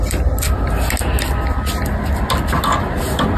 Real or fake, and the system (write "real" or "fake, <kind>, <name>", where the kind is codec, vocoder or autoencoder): real